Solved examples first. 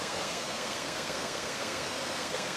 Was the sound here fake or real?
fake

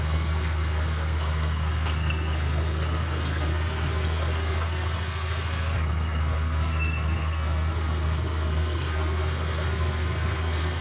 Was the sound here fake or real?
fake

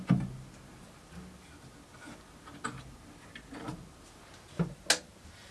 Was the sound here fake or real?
real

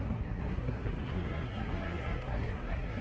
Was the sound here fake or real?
fake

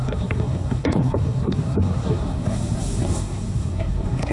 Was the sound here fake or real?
fake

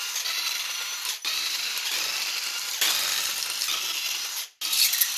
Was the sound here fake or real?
real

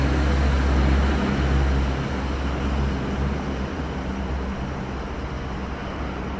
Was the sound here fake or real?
real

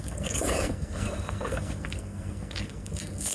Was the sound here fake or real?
fake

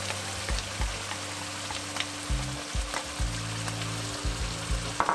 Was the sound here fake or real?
real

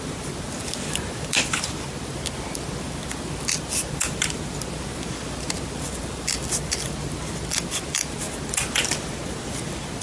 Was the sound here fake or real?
real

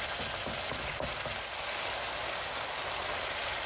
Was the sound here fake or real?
real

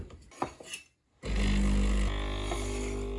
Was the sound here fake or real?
real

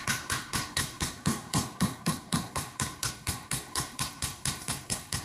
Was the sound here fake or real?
fake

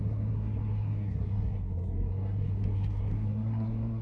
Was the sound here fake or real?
fake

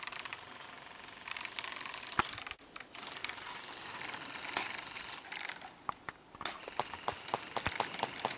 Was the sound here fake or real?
real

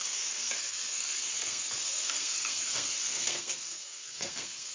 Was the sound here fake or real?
fake